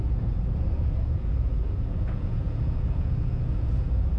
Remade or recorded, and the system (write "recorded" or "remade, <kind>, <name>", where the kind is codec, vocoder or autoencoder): remade, vocoder, Vocos